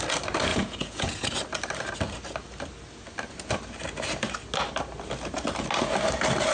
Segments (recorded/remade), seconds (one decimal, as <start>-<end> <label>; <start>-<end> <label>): 0.0-0.5 recorded; 0.5-1.3 remade; 1.3-6.5 recorded